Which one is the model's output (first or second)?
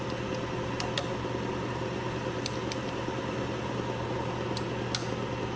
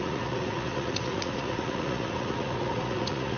second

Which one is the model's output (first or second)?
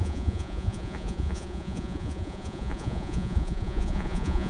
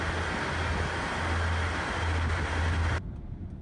first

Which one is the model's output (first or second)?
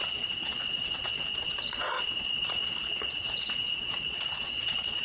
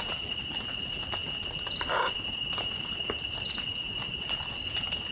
first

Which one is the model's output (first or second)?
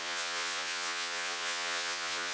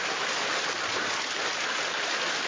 first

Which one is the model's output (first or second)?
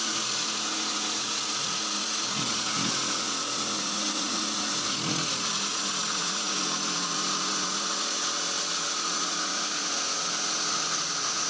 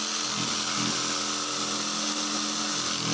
first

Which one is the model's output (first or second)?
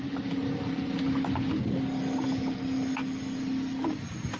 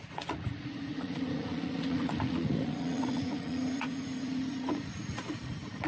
second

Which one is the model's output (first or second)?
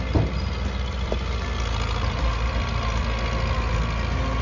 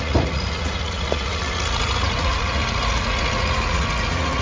second